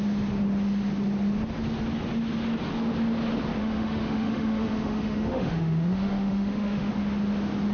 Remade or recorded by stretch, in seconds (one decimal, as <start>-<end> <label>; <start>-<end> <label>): 0.0-3.6 recorded; 3.6-6.9 remade; 6.9-7.7 recorded